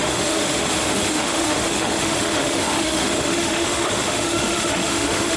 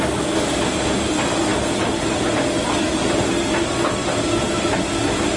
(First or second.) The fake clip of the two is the first